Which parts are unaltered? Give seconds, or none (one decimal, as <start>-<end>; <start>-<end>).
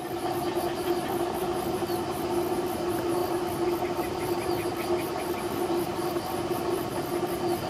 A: 0.0-7.7